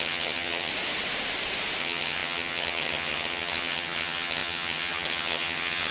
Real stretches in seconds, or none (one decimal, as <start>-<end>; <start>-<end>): 0.7-1.8